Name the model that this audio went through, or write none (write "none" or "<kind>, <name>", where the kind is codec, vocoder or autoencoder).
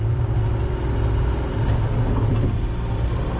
none